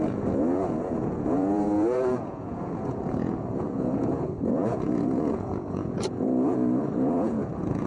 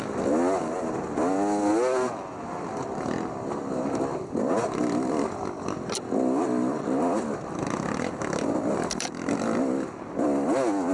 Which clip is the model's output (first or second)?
first